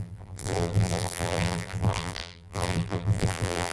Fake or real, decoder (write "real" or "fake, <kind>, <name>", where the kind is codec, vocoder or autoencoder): fake, vocoder, BigVGAN v2